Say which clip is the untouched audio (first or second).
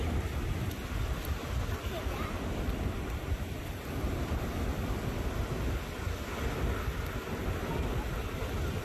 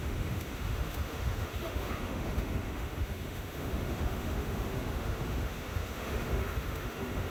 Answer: first